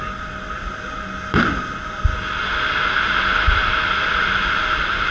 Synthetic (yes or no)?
no